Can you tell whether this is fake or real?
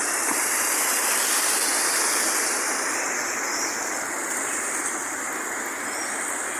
real